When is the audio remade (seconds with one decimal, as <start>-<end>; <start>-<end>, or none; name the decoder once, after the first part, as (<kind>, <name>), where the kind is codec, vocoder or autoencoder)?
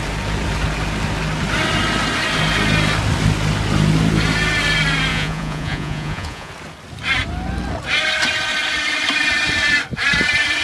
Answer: 5.1-6.5 (vocoder, Vocos)